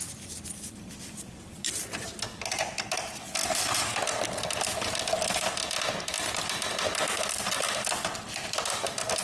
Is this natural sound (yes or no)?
yes